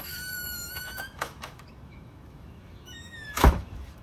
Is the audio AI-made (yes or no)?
yes